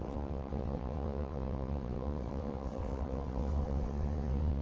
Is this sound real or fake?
fake